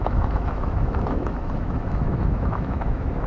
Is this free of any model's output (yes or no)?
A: no